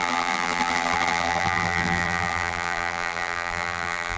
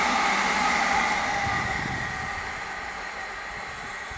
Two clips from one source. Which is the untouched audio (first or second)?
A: second